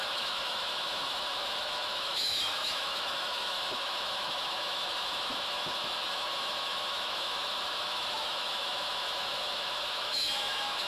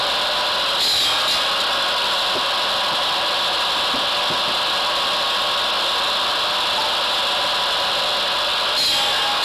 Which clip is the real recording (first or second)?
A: second